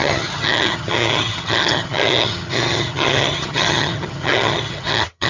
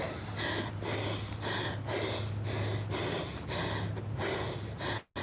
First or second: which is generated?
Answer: first